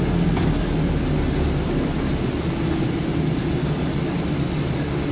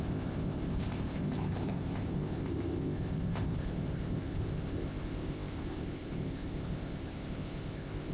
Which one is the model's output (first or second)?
second